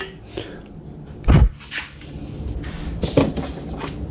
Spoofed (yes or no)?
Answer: no